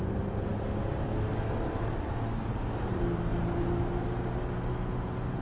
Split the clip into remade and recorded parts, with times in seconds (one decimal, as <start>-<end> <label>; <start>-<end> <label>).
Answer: 0.0-5.4 recorded